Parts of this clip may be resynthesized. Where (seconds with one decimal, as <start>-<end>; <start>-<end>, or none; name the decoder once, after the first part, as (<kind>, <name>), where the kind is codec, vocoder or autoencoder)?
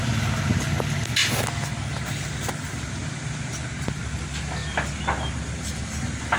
none